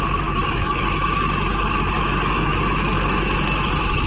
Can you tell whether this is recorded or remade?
remade